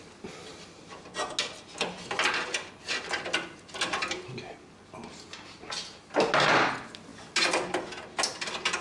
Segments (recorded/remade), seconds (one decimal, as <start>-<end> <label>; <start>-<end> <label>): 0.0-8.8 recorded